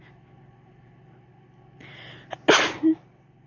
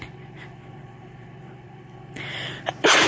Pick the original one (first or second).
first